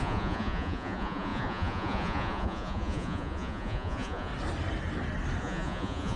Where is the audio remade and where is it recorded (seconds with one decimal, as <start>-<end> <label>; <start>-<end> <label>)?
0.0-4.3 remade; 4.3-5.4 recorded; 5.4-6.2 remade